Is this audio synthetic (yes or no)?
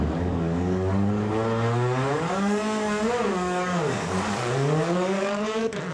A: yes